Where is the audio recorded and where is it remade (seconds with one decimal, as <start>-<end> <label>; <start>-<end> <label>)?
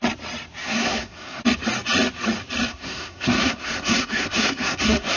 0.0-0.6 recorded; 0.6-1.4 remade; 1.4-2.7 recorded; 2.7-5.2 remade